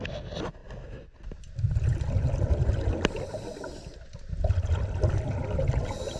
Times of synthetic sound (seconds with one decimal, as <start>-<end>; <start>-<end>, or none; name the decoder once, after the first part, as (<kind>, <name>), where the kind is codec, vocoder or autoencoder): none